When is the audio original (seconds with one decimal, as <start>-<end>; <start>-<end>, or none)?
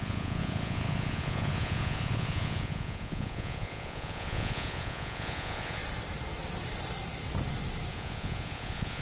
5.8-7.9